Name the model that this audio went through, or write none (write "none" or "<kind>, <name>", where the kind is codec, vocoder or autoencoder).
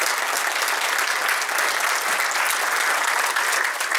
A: none